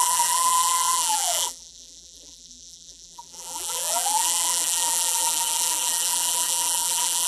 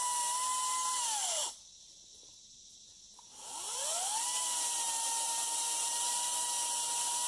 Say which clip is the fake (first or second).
first